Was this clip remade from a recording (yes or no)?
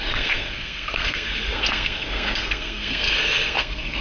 yes